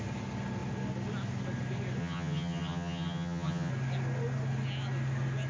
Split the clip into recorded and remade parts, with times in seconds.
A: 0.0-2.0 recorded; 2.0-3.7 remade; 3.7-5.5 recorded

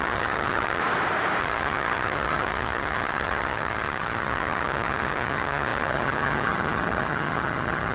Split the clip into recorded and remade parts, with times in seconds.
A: 0.0-0.8 remade; 0.8-1.4 recorded; 1.4-7.9 remade

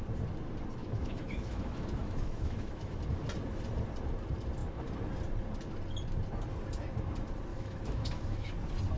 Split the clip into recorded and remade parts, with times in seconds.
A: 0.0-0.8 recorded; 0.8-3.0 remade; 3.0-7.5 recorded; 7.5-8.5 remade; 8.5-9.0 recorded

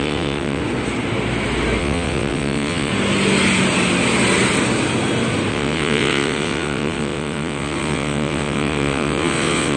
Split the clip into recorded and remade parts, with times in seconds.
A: 0.0-0.6 remade; 0.6-1.8 recorded; 1.8-2.9 remade; 2.9-5.5 recorded; 5.5-9.8 remade

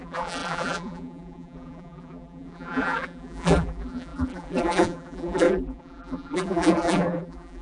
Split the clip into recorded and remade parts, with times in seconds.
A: 0.0-7.6 remade

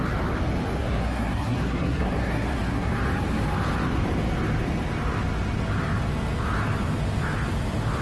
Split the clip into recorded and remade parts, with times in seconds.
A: 0.0-0.8 recorded; 0.8-2.9 remade; 2.9-8.0 recorded

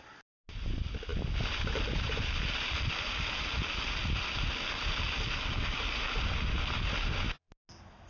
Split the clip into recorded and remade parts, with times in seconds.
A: 0.0-8.1 recorded